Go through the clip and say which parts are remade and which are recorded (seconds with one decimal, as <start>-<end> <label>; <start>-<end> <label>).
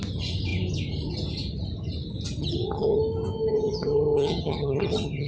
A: 0.0-2.4 recorded; 2.4-3.0 remade; 3.0-3.5 recorded; 3.5-5.3 remade